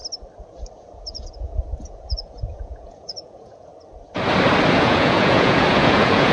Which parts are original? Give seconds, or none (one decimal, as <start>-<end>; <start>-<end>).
0.0-0.8; 3.7-4.8